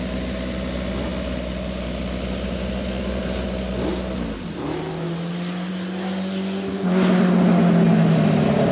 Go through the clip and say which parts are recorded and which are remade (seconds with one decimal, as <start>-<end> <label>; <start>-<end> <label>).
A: 0.0-8.7 recorded